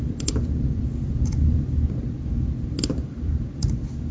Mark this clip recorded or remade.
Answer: remade